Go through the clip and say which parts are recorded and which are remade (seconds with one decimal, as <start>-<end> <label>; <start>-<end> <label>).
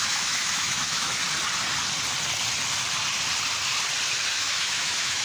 0.0-1.2 remade; 1.2-4.3 recorded; 4.3-5.2 remade